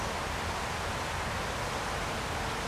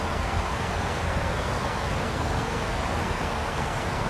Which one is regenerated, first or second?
second